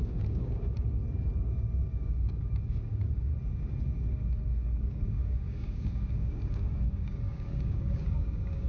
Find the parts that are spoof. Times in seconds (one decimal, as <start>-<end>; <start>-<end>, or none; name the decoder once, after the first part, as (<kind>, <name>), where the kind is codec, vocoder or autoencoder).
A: 0.0-1.0 (codec, DAC); 1.8-3.3; 4.8-8.7